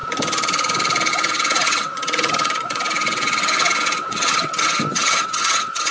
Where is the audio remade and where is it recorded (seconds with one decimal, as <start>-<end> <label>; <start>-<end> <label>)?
0.0-1.1 recorded; 1.1-5.9 remade